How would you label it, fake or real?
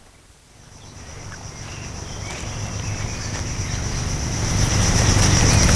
real